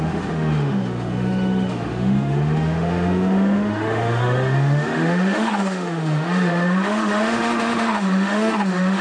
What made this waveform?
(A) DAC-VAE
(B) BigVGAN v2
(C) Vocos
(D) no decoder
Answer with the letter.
A